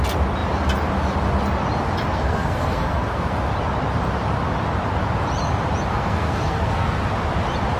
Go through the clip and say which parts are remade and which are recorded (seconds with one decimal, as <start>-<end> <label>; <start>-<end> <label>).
0.0-2.1 recorded; 2.1-3.4 remade; 3.4-5.9 recorded; 5.9-7.0 remade; 7.0-7.8 recorded